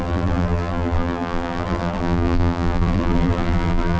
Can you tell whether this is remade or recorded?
remade